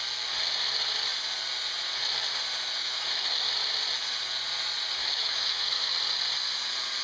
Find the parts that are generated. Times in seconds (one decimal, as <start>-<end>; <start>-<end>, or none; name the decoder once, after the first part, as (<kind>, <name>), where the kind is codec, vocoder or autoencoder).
2.8-3.5 (autoencoder, DAC-VAE); 5.0-5.9